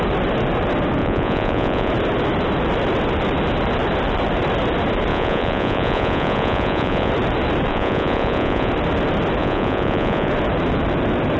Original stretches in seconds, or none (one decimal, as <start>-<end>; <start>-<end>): 0.0-1.0; 1.9-5.1; 7.1-7.7; 8.7-9.4; 10.3-11.4